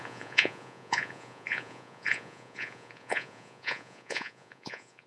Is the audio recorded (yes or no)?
no